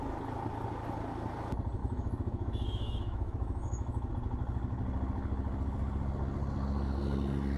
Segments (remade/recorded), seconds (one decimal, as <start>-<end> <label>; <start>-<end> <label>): 0.0-1.8 recorded; 1.8-4.1 remade; 4.1-7.6 recorded